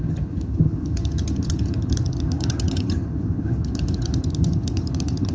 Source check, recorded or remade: remade